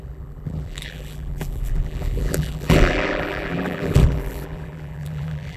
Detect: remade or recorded remade